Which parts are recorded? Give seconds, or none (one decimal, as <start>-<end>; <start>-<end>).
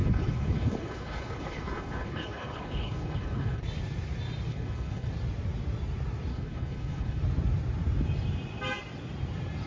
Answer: 3.6-4.5; 5.1-6.3; 7.2-9.7